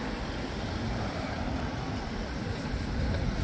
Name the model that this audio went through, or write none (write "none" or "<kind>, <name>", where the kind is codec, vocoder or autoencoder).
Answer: none